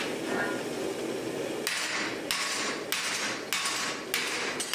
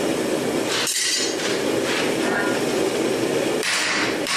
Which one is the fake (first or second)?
second